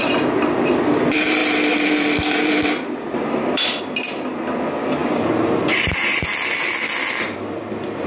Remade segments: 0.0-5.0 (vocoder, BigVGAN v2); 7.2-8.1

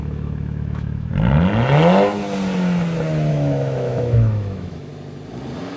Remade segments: 0.0-1.1 (autoencoder, DAC-VAE); 3.3-4.9

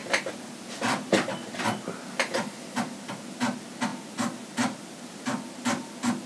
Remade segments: none